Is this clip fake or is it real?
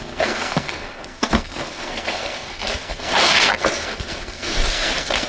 fake